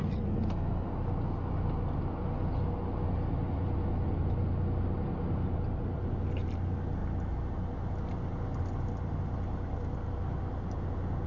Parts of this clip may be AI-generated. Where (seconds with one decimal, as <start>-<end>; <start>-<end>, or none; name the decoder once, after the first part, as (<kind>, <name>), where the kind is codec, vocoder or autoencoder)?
none